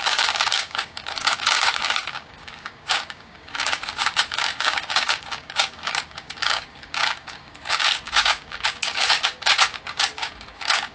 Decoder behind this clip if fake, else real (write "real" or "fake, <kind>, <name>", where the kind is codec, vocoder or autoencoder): fake, codec, DAC